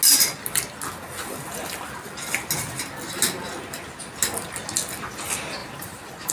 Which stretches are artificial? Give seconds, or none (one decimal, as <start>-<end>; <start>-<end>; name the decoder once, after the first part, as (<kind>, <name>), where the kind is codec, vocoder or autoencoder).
5.6-6.3 (vocoder, BigVGAN v2)